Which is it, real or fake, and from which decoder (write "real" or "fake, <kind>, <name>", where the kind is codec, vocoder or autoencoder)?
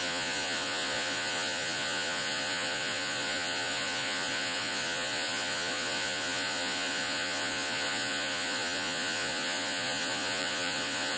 fake, vocoder, Vocos